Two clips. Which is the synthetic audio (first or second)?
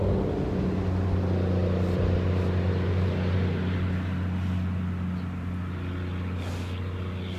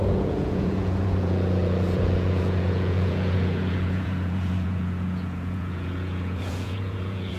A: second